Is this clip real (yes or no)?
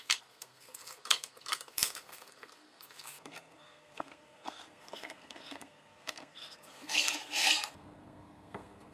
no